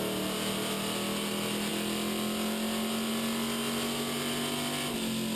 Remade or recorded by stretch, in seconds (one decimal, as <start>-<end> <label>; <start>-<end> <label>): 0.0-5.4 recorded